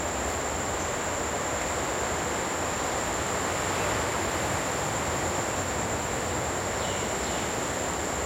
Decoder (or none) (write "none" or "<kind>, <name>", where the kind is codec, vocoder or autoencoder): none